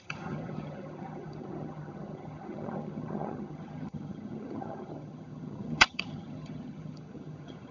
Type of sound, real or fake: fake